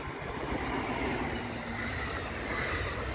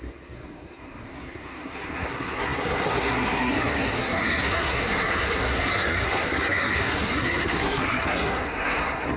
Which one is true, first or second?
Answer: first